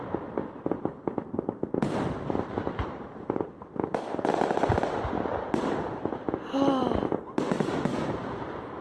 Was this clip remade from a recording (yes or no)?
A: yes